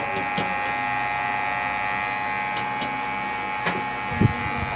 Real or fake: real